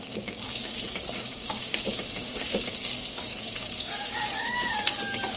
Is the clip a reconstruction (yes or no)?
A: yes